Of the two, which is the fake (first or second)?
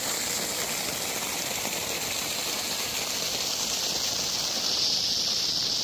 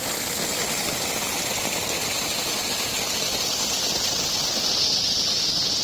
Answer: second